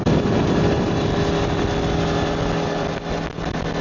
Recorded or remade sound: recorded